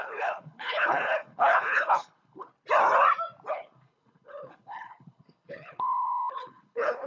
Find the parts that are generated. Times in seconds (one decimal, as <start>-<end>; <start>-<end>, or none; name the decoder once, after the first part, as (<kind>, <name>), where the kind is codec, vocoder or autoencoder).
0.0-2.5 (codec, HILCodec); 3.5-7.1